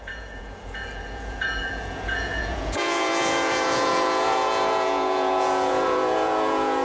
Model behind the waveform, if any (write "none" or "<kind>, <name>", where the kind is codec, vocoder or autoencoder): vocoder, Vocos